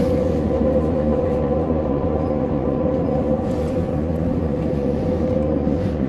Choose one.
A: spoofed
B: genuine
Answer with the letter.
A